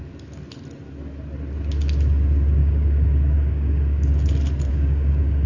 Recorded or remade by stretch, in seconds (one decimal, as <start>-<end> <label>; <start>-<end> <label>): 0.0-2.6 recorded; 2.6-4.1 remade; 4.1-4.7 recorded; 4.7-5.5 remade